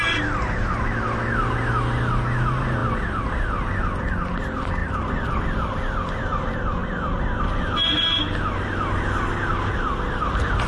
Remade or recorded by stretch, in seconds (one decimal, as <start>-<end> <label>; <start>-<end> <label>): 0.0-4.8 recorded; 4.8-5.4 remade; 5.4-6.8 recorded; 6.8-7.4 remade; 7.4-10.7 recorded